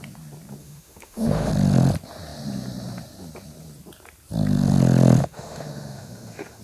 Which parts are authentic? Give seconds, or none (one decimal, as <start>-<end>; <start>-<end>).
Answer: 0.0-0.6; 1.5-5.2